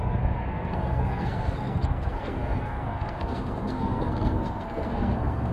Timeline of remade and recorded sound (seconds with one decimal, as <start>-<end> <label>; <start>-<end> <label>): 0.0-5.5 remade